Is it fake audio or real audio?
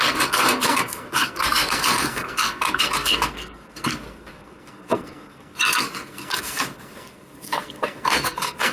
fake